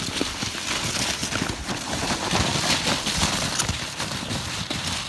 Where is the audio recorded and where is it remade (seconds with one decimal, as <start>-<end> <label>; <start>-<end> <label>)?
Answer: 0.0-1.2 remade; 1.2-4.3 recorded; 4.3-5.1 remade

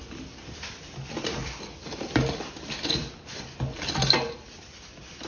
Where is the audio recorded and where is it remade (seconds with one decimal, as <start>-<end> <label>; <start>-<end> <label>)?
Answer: 0.0-1.4 recorded; 1.4-4.6 remade; 4.6-5.3 recorded

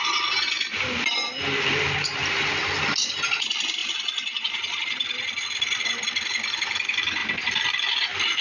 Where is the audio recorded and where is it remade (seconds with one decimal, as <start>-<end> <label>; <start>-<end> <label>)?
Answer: 0.0-8.4 recorded